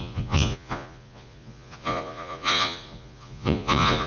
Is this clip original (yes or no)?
no